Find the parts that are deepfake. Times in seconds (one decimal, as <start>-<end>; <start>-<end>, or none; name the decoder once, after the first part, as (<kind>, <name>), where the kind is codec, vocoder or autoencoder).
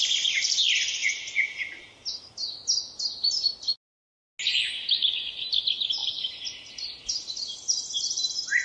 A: 6.0-7.1 (vocoder, BigVGAN v2)